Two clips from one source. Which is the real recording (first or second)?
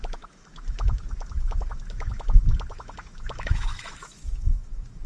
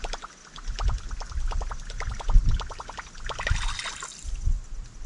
second